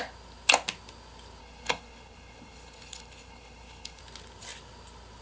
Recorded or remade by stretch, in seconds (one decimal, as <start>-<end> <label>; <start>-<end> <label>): 0.0-1.4 recorded; 1.4-4.0 remade; 4.0-5.2 recorded